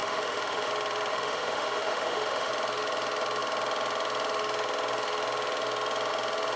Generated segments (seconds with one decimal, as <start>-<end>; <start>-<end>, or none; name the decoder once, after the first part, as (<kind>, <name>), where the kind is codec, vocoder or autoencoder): 0.0-0.7 (autoencoder, DAC-VAE); 1.1-2.5